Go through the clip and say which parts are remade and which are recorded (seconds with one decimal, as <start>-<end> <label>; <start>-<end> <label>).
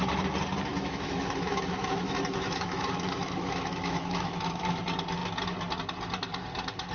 0.0-0.7 recorded; 0.7-4.8 remade; 4.8-6.9 recorded